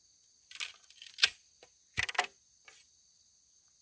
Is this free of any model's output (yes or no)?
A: yes